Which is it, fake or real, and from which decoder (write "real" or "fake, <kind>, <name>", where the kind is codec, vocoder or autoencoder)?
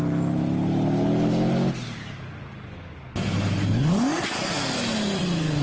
real